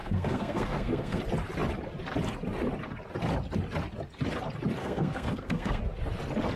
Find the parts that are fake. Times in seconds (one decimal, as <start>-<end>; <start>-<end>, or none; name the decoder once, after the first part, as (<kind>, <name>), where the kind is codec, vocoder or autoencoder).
0.0-1.2 (codec, SNAC); 4.8-5.8